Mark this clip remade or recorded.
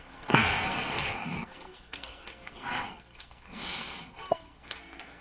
remade